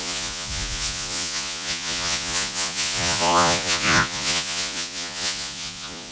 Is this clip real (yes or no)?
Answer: no